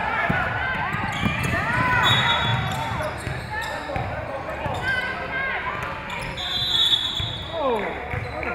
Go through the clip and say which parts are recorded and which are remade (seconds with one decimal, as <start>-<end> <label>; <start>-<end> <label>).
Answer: 0.0-0.7 remade; 0.7-2.5 recorded; 2.5-3.1 remade; 3.1-8.5 recorded